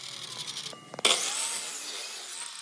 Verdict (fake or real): real